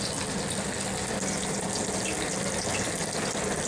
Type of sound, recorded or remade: recorded